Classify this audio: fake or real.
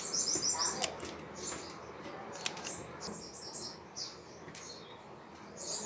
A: real